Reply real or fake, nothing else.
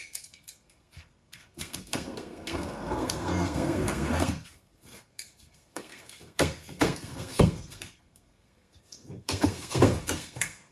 fake